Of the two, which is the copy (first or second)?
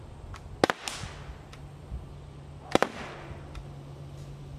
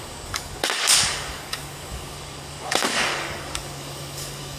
second